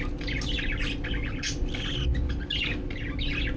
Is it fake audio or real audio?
real